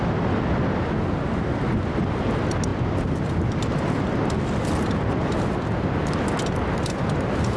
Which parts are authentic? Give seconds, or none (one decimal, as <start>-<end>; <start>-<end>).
0.0-7.6